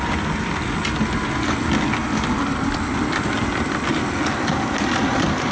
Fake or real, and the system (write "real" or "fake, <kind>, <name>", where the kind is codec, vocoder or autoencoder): real